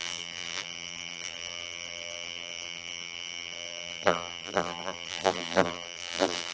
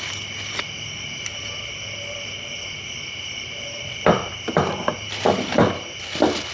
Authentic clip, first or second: second